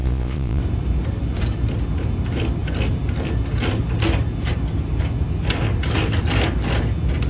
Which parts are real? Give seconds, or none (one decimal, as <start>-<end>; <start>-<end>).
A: 0.6-7.3

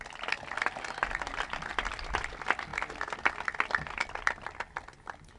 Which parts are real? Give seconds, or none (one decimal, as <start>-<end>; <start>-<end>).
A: 0.0-5.4

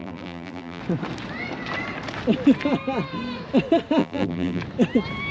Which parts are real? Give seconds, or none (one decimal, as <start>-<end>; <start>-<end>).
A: 0.8-4.0; 4.6-5.3

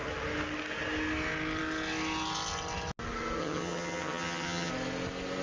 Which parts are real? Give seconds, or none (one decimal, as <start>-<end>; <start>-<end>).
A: 0.0-3.4; 4.7-5.4

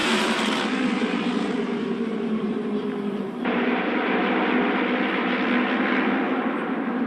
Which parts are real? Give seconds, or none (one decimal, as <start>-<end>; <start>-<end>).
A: 4.3-7.1

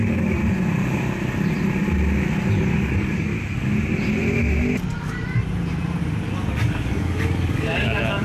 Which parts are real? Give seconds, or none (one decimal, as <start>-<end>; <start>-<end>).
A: 0.4-2.5; 3.3-6.5

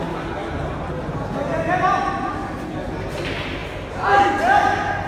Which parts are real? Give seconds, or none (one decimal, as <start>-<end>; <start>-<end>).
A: 0.0-5.1

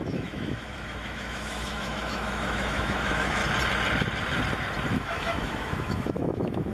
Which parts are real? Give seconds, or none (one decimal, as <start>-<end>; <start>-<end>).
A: 3.4-4.9